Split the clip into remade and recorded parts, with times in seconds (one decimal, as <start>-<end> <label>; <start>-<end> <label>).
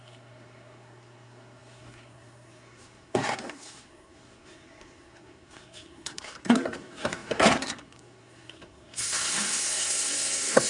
0.0-10.7 remade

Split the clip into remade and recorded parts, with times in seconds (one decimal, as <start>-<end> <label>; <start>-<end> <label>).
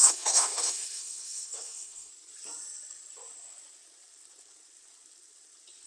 0.0-2.1 remade; 2.1-5.9 recorded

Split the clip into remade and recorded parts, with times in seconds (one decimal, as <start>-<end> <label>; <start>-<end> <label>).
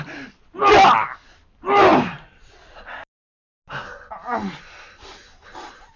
0.0-6.0 recorded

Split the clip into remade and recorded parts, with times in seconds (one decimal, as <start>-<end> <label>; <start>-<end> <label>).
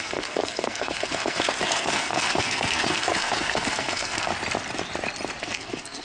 0.0-4.3 remade; 4.3-5.4 recorded; 5.4-6.0 remade